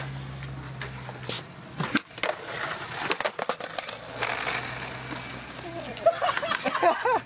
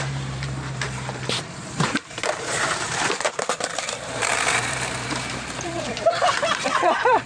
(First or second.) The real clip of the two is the first